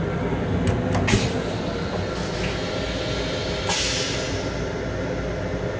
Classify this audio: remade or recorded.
recorded